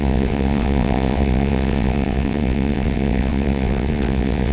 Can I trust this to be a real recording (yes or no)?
no